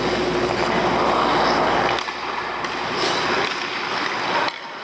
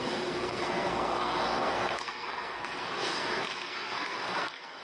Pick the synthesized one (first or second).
second